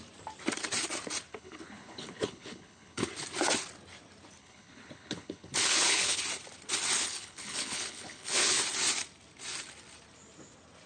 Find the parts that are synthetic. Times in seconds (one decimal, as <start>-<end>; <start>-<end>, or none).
1.3-3.1; 4.4-6.2; 7.0-8.6